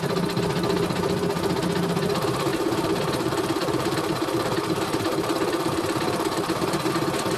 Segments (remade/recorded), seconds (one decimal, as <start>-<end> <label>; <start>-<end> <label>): 0.0-2.5 recorded; 2.5-6.9 remade; 6.9-7.4 recorded